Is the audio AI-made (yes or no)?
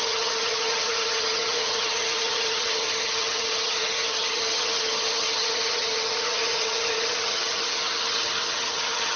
yes